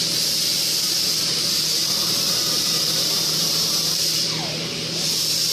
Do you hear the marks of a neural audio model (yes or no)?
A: yes